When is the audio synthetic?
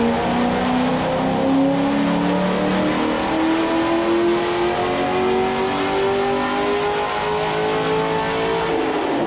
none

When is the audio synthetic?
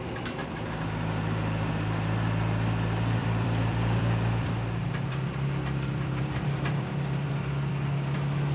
3.2-7.7 (vocoder, BigVGAN v2)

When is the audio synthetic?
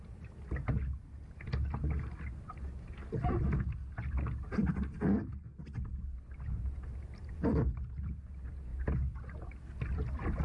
none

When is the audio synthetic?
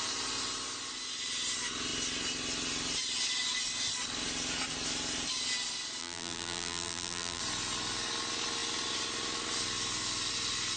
6.0-7.4 (vocoder, BigVGAN v2)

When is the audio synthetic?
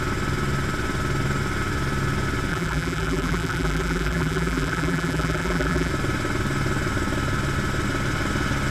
2.5-5.9 (vocoder, BigVGAN v2)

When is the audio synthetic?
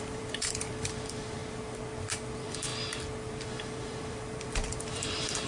0.0-1.4 (vocoder, BigVGAN v2); 2.3-2.7; 3.3-5.5